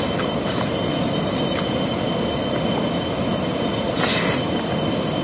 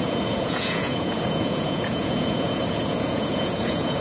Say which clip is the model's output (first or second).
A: second